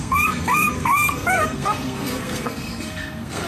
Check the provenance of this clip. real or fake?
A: fake